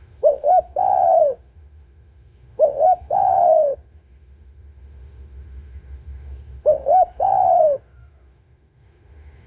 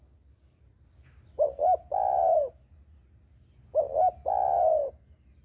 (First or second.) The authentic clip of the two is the second